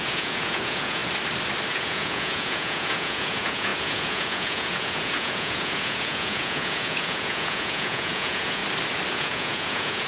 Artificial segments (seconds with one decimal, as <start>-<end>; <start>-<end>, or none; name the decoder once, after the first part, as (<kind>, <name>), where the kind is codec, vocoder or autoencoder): 0.0-1.0 (vocoder, Vocos); 1.7-8.6; 9.1-10.1